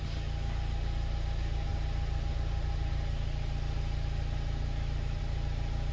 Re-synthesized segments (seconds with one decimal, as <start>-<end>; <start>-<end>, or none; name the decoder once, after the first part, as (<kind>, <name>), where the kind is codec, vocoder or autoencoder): none